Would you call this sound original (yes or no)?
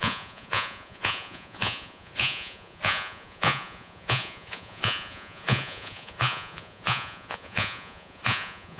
no